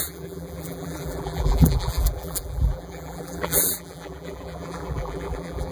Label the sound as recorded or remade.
remade